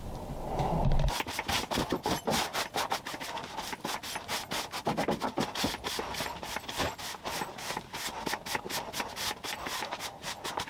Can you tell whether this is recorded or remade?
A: recorded